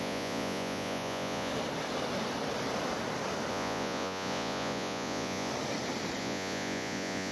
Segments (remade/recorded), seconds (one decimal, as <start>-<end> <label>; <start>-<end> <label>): 0.0-1.5 remade; 1.5-3.5 recorded; 3.5-5.5 remade; 5.5-6.2 recorded; 6.2-7.3 remade